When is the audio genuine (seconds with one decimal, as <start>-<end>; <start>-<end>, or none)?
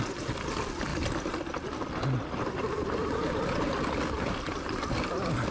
0.0-5.5